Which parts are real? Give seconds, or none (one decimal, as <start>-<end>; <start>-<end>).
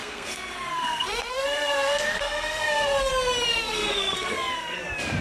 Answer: 3.1-3.5; 4.8-5.2